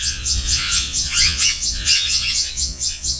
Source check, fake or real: fake